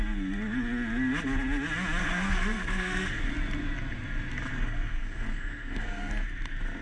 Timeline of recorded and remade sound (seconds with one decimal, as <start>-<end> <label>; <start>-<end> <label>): 0.0-2.0 recorded; 2.0-3.3 remade; 3.3-4.5 recorded; 4.5-6.1 remade; 6.1-6.8 recorded